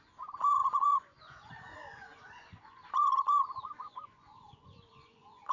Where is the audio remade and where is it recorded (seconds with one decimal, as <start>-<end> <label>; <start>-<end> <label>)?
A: 0.0-5.5 remade